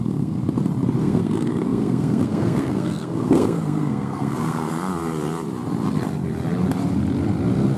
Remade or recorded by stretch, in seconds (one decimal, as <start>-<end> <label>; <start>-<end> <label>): 0.0-0.4 remade; 0.4-1.0 recorded; 1.0-4.9 remade; 4.9-7.8 recorded

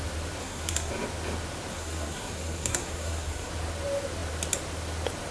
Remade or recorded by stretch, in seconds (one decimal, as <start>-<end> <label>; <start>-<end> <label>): 0.0-0.4 recorded; 0.4-0.9 remade; 0.9-1.7 recorded; 1.7-3.5 remade; 3.5-5.3 recorded

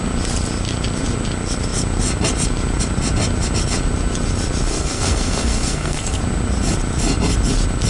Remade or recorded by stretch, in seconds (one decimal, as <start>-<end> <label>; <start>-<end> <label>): 0.0-4.7 recorded; 4.7-6.2 remade; 6.2-7.9 recorded